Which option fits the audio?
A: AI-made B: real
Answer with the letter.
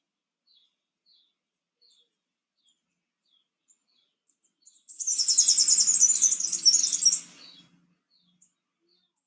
B